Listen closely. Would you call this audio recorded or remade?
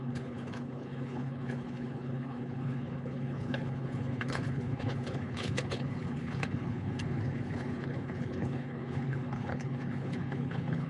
remade